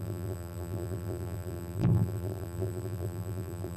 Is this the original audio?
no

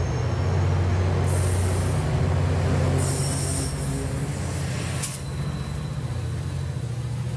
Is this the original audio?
yes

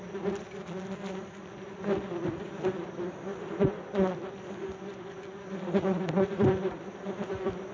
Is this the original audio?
no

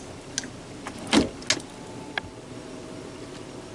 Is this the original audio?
yes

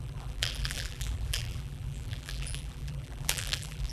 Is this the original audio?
no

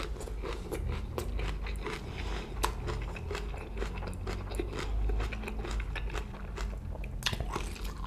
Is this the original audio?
yes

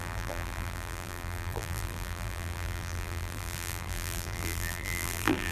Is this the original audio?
no